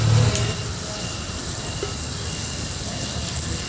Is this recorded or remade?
recorded